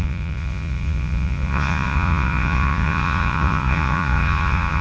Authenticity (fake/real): fake